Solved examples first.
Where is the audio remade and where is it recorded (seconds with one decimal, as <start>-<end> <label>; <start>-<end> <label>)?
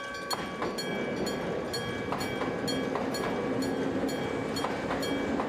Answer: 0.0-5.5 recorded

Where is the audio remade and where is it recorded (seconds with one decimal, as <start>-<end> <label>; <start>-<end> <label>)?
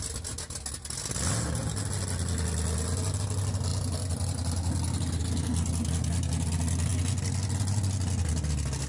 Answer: 0.0-8.9 recorded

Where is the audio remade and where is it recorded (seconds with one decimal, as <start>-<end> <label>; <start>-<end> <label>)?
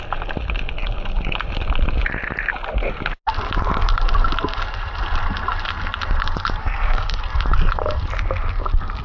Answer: 0.0-6.6 recorded; 6.6-7.2 remade; 7.2-9.0 recorded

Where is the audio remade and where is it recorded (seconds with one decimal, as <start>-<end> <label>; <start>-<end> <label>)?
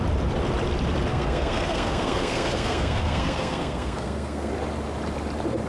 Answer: 0.0-1.1 recorded; 1.1-4.5 remade; 4.5-5.7 recorded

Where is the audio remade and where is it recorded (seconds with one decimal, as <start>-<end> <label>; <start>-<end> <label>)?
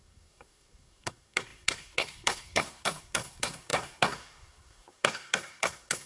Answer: 0.0-6.1 remade